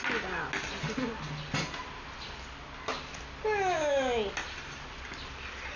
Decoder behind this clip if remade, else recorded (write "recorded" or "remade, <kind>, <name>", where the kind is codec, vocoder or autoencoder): recorded